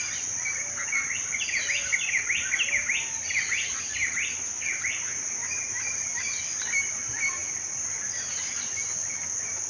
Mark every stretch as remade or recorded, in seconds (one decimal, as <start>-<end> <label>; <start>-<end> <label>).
0.0-9.7 recorded